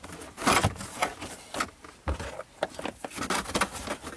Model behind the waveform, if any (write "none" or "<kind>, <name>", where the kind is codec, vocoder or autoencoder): none